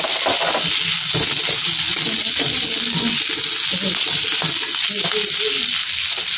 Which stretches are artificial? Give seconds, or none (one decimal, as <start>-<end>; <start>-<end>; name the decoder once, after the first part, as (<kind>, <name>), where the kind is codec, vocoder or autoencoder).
none